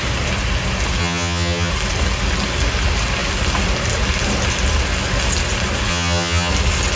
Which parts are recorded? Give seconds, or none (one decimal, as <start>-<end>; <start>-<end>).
0.0-1.0; 1.7-5.9; 6.5-7.0